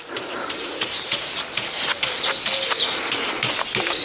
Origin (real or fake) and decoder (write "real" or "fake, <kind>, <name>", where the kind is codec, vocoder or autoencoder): real